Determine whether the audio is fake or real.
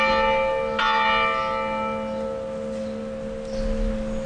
real